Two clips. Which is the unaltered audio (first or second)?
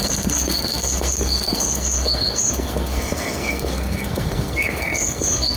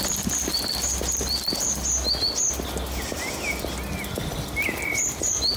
second